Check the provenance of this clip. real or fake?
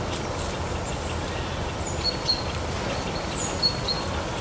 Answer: real